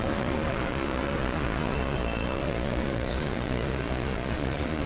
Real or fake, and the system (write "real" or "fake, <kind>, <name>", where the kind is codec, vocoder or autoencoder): fake, vocoder, Vocos